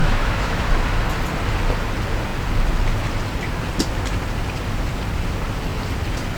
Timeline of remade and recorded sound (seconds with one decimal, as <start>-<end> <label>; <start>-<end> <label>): 0.0-0.7 remade; 0.7-6.4 recorded